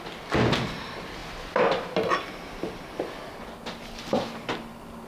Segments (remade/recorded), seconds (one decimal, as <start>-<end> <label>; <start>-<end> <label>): 0.0-5.1 recorded